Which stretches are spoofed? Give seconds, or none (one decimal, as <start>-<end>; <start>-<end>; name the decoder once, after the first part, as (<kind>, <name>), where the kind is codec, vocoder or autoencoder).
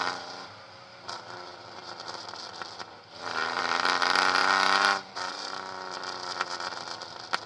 0.0-3.6 (vocoder, BigVGAN v2); 4.4-5.3